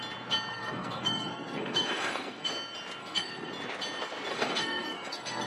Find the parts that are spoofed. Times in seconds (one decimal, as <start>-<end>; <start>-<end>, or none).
0.5-2.5; 3.0-3.5; 4.3-5.5